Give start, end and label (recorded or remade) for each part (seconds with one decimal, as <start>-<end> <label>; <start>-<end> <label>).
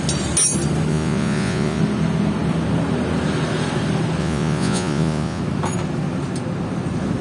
0.0-0.9 recorded; 0.9-1.8 remade; 1.8-4.2 recorded; 4.2-5.4 remade; 5.4-7.2 recorded